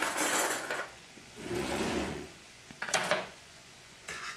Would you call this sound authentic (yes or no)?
no